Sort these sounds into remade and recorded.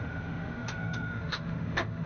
remade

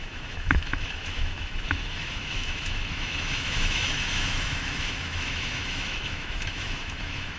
remade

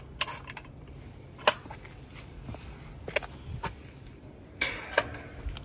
recorded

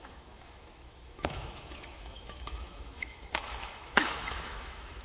remade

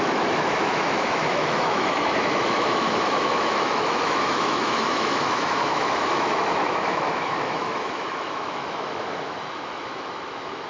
remade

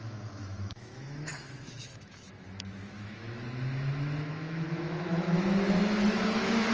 remade